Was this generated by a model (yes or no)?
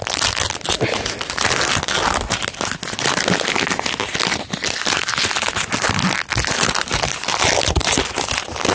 no